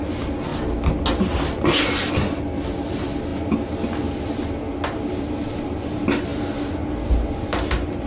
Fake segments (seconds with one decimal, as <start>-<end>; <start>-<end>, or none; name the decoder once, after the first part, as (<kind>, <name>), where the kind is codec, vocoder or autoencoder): none